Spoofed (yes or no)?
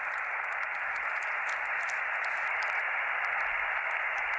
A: no